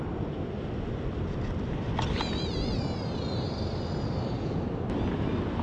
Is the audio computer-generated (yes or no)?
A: no